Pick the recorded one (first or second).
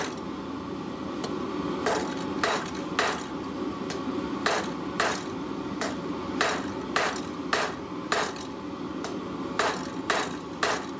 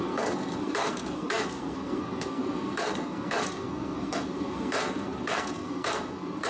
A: first